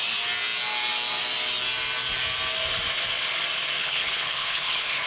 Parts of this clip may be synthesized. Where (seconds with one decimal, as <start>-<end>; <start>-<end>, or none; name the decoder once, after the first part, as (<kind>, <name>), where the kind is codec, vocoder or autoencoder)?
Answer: 3.8-5.1 (codec, HILCodec)